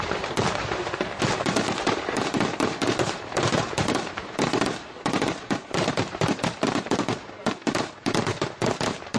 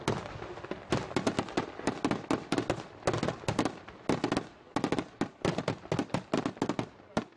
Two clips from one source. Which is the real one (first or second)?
second